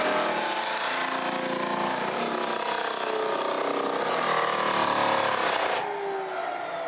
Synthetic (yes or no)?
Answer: no